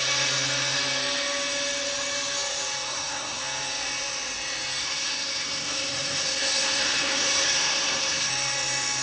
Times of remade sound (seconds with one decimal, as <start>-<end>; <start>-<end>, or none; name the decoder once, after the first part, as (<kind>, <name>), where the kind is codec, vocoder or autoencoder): 2.9-3.4 (codec, SNAC); 4.8-8.3